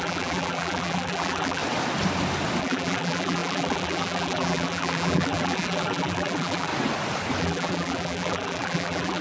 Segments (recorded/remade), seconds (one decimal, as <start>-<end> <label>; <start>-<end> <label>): 0.0-1.6 remade; 1.6-2.6 recorded; 2.6-6.7 remade; 6.7-7.4 recorded; 7.4-9.2 remade